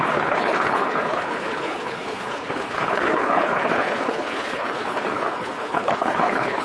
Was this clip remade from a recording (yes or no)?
yes